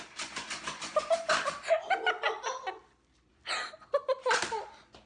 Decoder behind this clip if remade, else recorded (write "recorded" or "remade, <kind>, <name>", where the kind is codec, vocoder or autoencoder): recorded